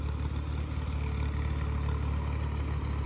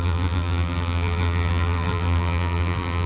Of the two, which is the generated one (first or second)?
second